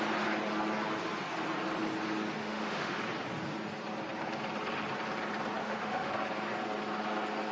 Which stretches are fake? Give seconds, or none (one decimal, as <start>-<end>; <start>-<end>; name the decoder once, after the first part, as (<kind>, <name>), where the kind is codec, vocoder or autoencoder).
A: 2.4-3.0 (autoencoder, DAC-VAE); 5.6-6.1

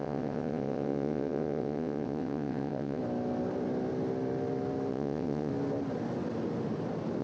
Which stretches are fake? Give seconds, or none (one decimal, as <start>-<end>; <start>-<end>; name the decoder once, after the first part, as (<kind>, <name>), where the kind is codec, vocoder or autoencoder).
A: 0.0-3.0 (vocoder, WaveNeXt); 4.9-5.5

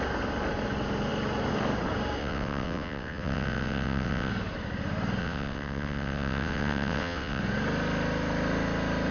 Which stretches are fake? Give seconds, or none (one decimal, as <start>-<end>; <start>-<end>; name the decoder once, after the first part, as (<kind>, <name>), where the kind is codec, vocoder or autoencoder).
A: 2.2-4.3 (vocoder, WaveNeXt); 5.2-7.4

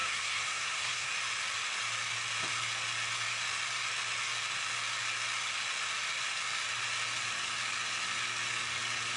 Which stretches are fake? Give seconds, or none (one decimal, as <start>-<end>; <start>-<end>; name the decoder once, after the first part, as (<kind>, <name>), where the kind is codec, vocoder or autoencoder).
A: 0.0-1.1 (codec, SNAC)

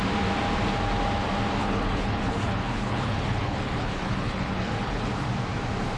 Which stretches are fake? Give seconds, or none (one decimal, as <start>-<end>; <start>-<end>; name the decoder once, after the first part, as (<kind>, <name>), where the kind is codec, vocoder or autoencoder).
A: 1.6-5.1 (codec, HILCodec)

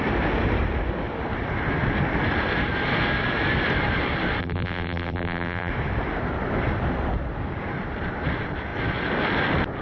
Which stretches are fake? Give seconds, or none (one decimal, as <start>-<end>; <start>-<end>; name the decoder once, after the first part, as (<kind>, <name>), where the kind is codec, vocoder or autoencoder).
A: 4.4-5.7 (vocoder, BigVGAN v2)

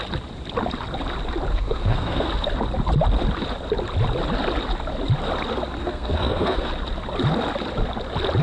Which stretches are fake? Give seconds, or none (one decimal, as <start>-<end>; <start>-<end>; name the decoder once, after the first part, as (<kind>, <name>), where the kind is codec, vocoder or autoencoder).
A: 1.5-2.3 (codec, SNAC); 5.8-6.7

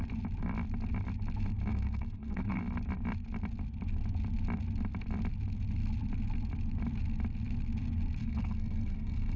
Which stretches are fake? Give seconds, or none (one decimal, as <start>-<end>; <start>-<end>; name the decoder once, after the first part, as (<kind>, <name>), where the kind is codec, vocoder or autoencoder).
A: 1.7-2.6 (codec, SNAC); 8.2-9.4